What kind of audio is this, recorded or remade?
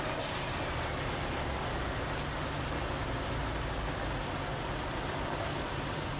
recorded